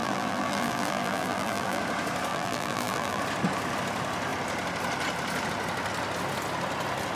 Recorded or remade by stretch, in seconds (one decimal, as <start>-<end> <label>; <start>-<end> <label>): 0.0-1.8 remade; 1.8-2.3 recorded; 2.3-3.2 remade; 3.2-7.2 recorded